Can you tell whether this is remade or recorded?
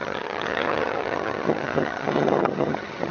remade